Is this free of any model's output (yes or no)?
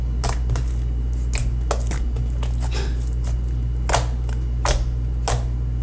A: yes